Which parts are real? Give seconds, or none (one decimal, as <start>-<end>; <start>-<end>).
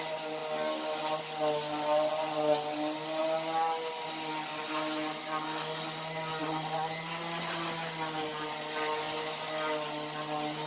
0.0-10.7